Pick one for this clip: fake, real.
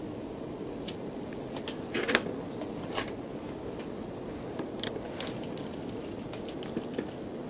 real